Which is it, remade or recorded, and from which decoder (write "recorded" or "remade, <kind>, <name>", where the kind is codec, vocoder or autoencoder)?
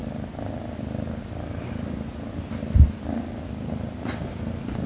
recorded